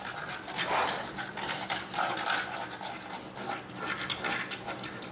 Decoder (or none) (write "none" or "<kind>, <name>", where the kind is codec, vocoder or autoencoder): none